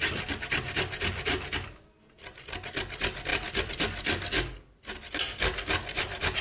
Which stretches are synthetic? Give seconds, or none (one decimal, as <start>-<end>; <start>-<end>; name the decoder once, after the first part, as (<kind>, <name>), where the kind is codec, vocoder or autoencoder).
none